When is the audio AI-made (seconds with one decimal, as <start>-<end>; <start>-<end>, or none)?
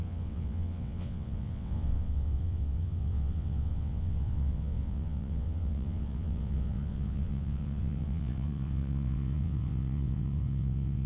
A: 0.0-11.1